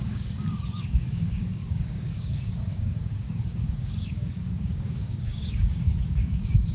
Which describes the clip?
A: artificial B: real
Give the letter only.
A